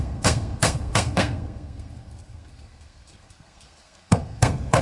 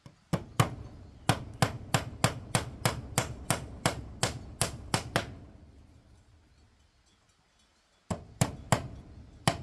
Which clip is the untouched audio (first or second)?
second